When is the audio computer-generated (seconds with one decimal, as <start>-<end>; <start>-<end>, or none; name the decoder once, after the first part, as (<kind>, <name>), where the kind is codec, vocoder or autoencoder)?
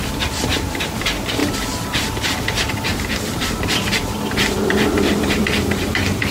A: 0.0-6.3 (vocoder, BigVGAN v2)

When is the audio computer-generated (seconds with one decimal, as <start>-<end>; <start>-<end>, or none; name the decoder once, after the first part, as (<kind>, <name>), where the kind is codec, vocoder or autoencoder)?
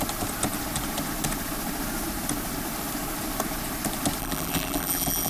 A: 4.2-5.3 (vocoder, BigVGAN v2)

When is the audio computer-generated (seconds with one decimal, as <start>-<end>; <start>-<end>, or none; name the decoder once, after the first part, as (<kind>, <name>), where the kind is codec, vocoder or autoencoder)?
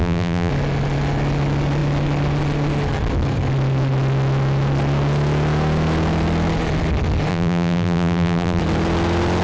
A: 0.0-0.5 (vocoder, BigVGAN v2); 7.3-8.6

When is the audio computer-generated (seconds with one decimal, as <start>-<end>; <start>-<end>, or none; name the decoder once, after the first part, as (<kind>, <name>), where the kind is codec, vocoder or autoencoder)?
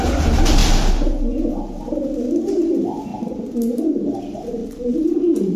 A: 3.1-3.8 (vocoder, BigVGAN v2); 4.6-5.6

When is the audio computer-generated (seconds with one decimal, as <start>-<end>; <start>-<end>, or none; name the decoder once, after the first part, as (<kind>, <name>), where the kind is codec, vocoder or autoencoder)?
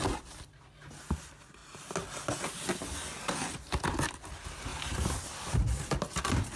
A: none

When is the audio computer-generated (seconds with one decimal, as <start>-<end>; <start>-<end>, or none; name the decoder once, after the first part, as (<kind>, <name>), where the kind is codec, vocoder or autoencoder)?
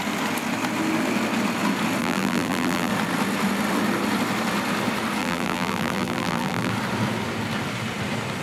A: 2.0-2.9 (vocoder, BigVGAN v2); 5.2-6.7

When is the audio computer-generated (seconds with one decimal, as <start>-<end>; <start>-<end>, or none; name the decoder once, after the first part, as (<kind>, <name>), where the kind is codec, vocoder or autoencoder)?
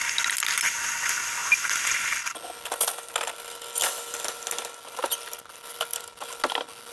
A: none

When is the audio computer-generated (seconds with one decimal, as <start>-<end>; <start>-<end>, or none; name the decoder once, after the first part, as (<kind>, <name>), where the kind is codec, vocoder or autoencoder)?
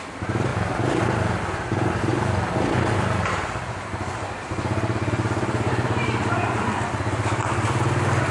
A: 0.0-0.5 (vocoder, BigVGAN v2); 1.1-8.3